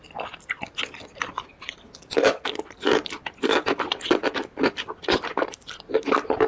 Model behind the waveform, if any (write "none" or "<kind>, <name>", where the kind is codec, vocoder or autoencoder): none